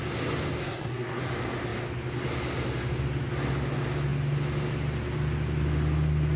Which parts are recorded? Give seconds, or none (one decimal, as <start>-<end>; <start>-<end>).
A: 0.0-0.6; 1.2-6.4